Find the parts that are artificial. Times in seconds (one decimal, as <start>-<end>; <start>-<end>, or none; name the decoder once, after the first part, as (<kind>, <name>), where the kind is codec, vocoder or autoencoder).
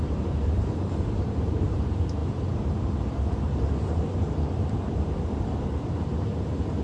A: 0.0-6.8 (vocoder, BigVGAN v2)